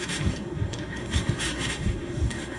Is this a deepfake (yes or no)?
yes